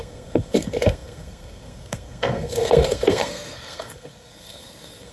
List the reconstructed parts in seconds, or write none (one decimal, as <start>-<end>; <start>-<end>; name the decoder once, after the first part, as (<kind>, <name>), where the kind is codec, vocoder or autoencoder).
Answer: 0.0-5.1 (codec, SNAC)